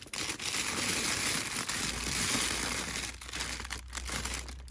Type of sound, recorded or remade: recorded